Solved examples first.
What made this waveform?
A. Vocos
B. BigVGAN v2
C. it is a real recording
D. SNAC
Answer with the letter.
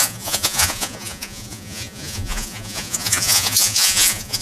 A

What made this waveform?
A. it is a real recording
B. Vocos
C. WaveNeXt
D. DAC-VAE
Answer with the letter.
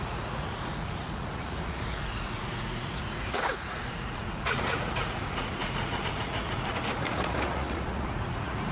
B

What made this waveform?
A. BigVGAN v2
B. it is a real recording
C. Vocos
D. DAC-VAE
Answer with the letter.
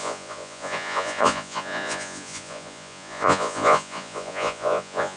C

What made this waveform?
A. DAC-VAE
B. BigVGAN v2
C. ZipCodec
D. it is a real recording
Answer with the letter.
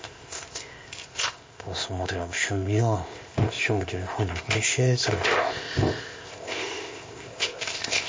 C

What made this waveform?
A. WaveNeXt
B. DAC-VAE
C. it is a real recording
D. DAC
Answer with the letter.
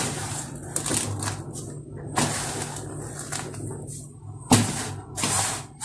C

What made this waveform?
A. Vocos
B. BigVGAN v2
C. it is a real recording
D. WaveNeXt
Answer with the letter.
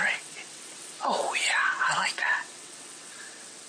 D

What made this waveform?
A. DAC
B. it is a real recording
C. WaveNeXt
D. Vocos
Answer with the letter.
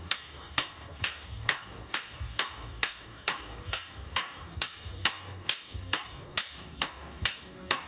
A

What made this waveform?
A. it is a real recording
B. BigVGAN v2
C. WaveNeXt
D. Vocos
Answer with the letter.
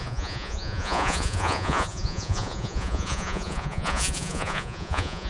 D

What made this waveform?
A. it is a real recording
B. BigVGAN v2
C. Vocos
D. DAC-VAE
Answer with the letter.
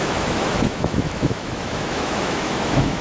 D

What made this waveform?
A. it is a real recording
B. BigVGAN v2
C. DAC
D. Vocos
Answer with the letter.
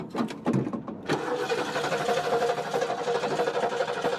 A